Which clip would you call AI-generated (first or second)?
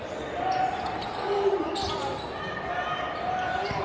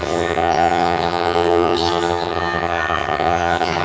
second